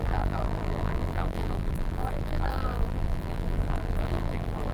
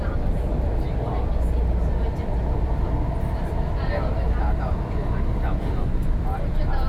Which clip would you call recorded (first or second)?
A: second